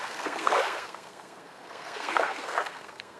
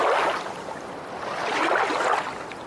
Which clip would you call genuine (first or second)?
second